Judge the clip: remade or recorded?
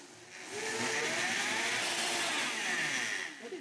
recorded